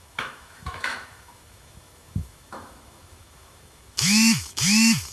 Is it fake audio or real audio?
fake